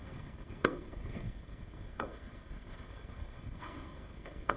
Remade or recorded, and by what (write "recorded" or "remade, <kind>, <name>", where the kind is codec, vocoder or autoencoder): remade, codec, SNAC